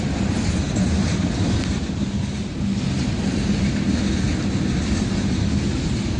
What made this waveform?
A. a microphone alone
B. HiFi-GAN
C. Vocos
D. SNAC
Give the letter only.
A